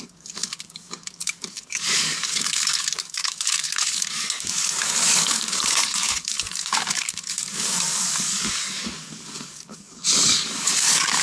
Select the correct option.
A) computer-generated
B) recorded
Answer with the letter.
A